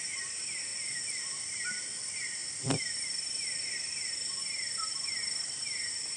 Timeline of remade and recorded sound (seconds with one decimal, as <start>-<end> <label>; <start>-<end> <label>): 0.0-6.2 remade